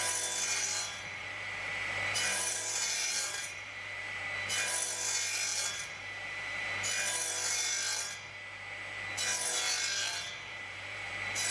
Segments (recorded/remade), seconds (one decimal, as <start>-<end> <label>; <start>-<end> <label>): 0.0-0.5 recorded; 0.5-4.2 remade; 4.2-5.5 recorded; 5.5-6.7 remade; 6.7-10.0 recorded; 10.0-11.1 remade; 11.1-11.5 recorded